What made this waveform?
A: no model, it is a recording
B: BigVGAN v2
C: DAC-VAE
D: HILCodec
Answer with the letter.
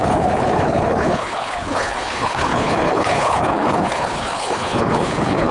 D